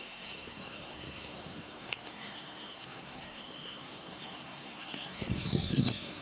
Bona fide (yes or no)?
no